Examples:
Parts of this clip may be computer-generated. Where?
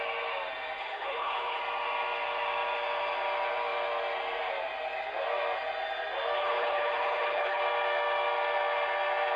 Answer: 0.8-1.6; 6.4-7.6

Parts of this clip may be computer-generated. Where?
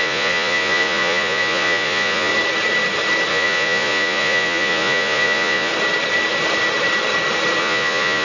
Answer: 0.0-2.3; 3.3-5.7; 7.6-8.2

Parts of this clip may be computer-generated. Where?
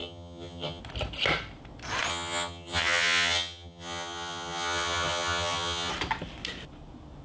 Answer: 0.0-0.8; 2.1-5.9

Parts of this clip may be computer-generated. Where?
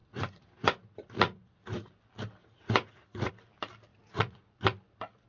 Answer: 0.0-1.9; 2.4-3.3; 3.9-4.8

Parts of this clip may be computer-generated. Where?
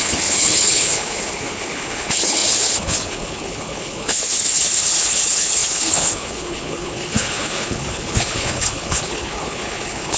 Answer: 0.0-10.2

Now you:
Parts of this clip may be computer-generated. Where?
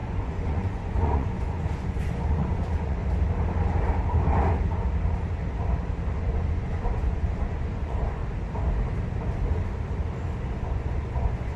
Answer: 0.0-3.0; 6.2-8.2; 10.6-11.6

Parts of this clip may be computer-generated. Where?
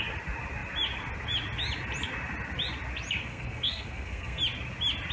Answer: 3.2-4.4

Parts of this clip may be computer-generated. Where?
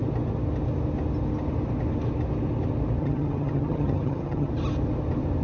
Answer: 3.0-4.5